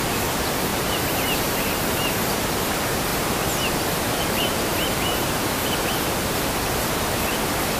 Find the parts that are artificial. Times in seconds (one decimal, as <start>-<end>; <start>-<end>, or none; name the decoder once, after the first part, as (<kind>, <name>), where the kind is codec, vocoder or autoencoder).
0.7-2.6 (vocoder, BigVGAN v2); 3.1-5.9

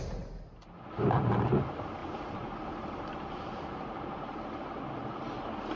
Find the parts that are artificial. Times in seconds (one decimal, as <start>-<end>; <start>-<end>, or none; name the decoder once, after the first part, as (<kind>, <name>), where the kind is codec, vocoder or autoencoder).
2.0-4.8 (vocoder, BigVGAN v2)

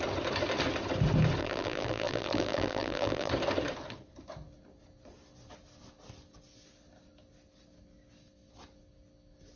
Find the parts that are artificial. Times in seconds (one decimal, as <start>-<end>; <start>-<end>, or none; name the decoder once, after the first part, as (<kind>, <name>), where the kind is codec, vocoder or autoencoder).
1.4-3.3 (vocoder, BigVGAN v2)

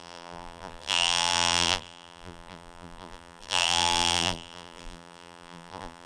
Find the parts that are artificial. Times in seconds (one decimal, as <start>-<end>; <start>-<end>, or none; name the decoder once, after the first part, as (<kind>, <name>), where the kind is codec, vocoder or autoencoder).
0.0-6.1 (vocoder, BigVGAN v2)

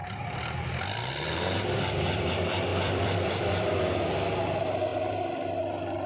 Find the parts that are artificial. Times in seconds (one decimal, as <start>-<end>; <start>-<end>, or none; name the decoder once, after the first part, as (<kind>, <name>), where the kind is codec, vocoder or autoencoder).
0.0-2.3 (vocoder, BigVGAN v2); 2.7-3.8